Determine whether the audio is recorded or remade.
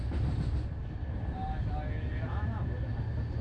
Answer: recorded